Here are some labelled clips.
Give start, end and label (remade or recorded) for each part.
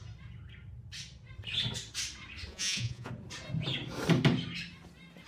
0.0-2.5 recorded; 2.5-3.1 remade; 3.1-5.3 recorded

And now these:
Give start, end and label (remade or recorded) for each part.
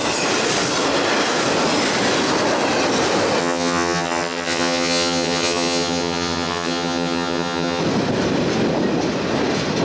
0.0-3.4 recorded; 3.4-7.8 remade; 7.8-9.8 recorded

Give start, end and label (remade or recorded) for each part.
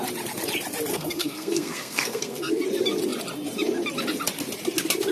0.0-0.9 recorded; 0.9-2.5 remade; 2.5-5.1 recorded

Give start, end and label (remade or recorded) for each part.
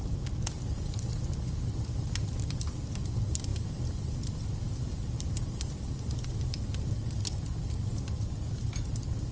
0.0-9.3 recorded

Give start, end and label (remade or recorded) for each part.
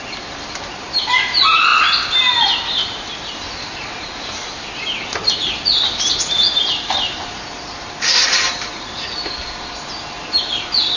0.0-11.0 recorded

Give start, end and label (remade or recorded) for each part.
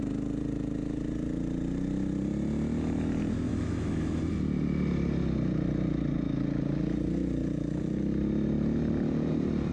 0.0-3.5 recorded; 3.5-4.2 remade; 4.2-9.7 recorded